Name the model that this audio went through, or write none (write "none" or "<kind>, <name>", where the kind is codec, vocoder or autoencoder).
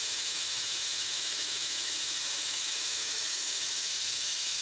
autoencoder, DAC-VAE